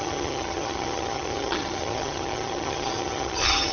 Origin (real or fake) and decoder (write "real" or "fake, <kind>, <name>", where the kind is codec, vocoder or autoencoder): fake, vocoder, HiFi-GAN